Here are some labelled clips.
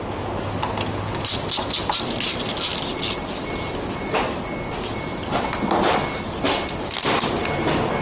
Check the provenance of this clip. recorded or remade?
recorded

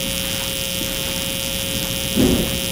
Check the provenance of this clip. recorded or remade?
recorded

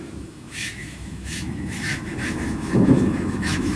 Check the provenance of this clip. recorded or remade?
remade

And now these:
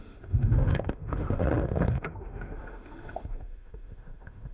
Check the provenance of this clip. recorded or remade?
remade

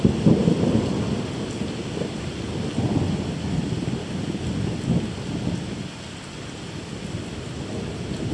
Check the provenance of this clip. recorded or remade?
recorded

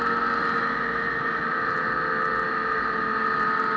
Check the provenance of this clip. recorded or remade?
recorded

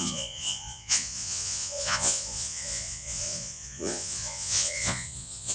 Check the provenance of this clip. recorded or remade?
remade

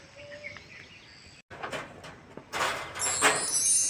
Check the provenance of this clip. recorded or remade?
recorded